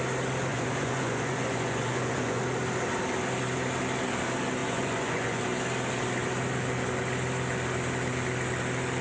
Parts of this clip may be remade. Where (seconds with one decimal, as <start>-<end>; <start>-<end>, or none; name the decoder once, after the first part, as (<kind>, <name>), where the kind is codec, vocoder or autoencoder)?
0.5-2.4 (vocoder, Vocos); 4.6-5.4